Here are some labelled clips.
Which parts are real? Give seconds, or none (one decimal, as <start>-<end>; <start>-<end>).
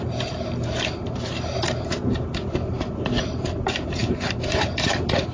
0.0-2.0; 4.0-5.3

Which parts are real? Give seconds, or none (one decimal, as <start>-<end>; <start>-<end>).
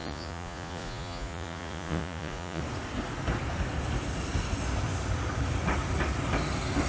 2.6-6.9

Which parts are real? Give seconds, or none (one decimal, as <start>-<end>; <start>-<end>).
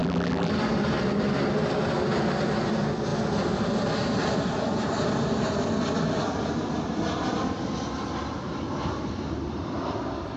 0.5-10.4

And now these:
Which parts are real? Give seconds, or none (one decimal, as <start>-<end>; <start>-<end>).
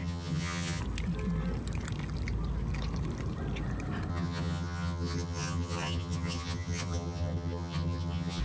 0.8-4.1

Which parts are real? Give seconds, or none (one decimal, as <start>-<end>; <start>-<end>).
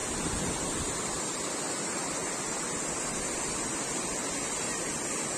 0.0-5.4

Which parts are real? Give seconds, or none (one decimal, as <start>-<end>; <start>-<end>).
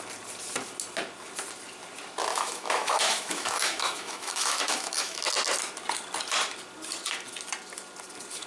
0.0-2.3; 5.2-8.5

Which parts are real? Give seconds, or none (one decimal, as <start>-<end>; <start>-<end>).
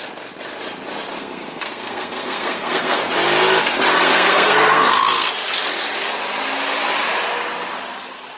0.0-1.2; 3.0-3.9; 5.3-8.4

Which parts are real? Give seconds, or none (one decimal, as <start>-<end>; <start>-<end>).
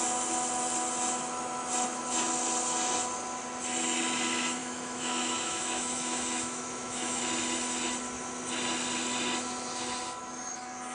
0.0-4.6; 7.2-10.9